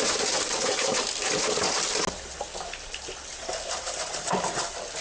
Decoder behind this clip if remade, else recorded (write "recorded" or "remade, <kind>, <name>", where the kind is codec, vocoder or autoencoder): recorded